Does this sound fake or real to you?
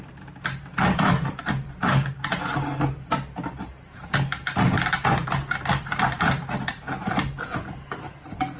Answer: real